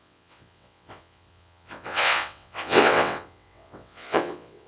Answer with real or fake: fake